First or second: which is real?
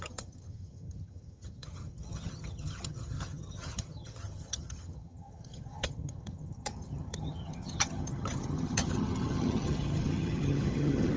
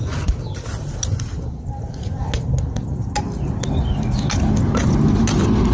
second